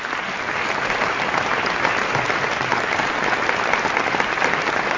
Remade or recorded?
recorded